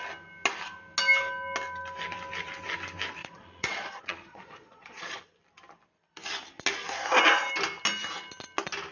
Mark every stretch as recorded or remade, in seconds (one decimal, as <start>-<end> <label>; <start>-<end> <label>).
0.0-3.2 recorded; 3.2-5.2 remade; 5.2-8.9 recorded